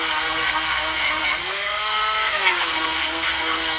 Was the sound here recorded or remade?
remade